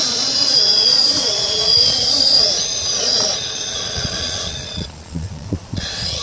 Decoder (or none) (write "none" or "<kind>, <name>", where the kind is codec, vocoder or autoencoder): vocoder, Vocos